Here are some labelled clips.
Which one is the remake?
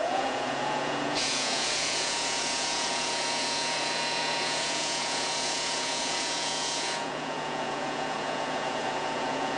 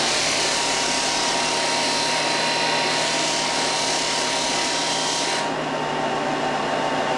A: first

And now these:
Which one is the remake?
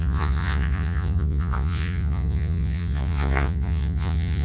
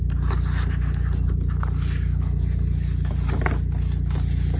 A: first